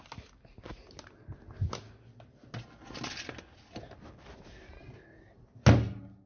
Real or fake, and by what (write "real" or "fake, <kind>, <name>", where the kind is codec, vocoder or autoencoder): real